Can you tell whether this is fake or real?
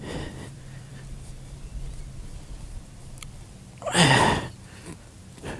fake